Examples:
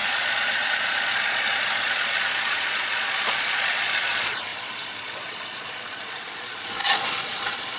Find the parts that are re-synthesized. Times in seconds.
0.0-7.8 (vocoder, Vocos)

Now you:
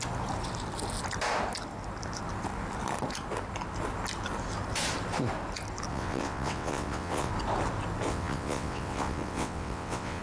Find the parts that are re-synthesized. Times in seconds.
5.9-7.3 (vocoder, WaveNeXt); 8.1-10.2

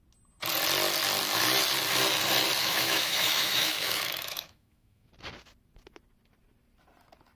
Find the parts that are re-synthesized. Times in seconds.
2.6-5.1 (autoencoder, DAC-VAE)

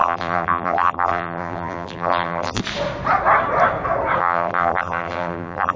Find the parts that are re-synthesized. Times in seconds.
0.0-2.6 (vocoder, BigVGAN v2); 4.2-5.8

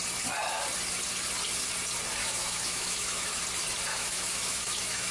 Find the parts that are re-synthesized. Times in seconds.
2.2-3.4 (autoencoder, DAC-VAE); 3.9-5.1

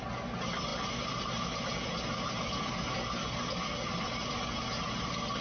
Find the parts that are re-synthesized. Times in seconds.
none

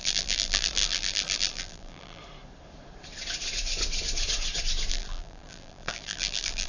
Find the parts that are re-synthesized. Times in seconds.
0.0-2.2 (vocoder, BigVGAN v2); 4.9-6.7